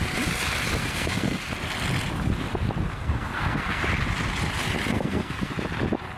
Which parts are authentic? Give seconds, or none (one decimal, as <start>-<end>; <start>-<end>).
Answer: 0.0-0.8; 1.4-2.9; 3.8-4.9; 5.5-6.2